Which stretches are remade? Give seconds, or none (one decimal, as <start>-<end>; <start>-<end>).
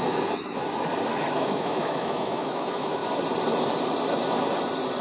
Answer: 0.0-0.6; 1.3-3.0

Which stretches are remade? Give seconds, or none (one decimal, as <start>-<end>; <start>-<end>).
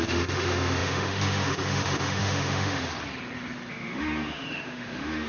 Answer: 0.0-2.9; 3.7-5.3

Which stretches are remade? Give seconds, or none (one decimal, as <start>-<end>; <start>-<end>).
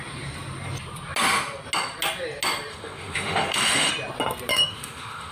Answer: 2.7-3.9; 4.5-5.3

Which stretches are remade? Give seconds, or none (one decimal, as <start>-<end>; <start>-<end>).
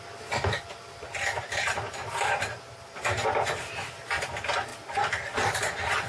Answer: none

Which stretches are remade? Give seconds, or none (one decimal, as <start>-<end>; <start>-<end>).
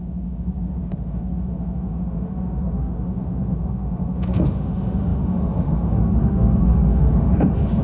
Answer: 0.0-7.8